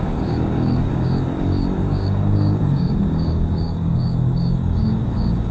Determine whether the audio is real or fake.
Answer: fake